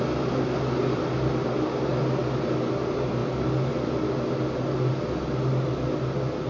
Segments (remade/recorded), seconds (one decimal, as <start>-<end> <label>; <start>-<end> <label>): 0.0-6.5 recorded